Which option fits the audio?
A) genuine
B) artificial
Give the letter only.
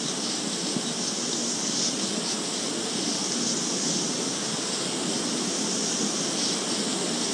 A